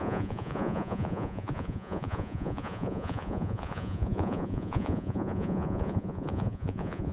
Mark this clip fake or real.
fake